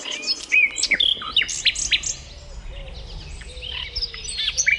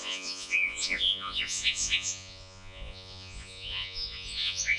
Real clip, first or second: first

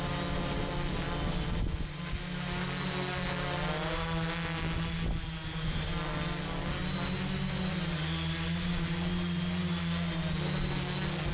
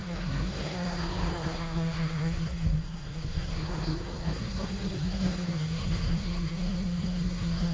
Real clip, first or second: first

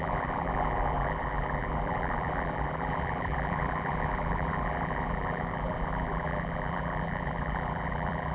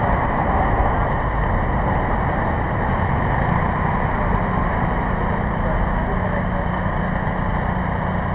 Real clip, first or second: second